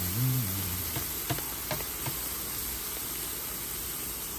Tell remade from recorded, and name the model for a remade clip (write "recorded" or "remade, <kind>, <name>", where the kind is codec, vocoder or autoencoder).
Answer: recorded